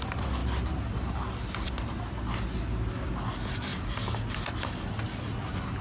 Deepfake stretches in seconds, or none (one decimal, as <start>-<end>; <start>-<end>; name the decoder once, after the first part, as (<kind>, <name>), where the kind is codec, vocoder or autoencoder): none